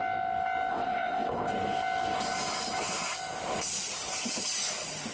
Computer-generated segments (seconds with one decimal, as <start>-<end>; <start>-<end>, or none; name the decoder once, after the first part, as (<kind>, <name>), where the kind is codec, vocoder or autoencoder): 0.7-1.5 (codec, ZipCodec)

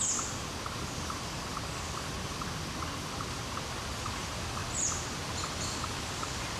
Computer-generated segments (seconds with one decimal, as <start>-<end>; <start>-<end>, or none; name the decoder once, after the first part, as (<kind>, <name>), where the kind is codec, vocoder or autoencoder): none